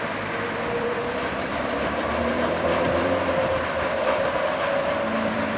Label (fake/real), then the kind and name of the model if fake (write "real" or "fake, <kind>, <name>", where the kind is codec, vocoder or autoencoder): fake, vocoder, BigVGAN v2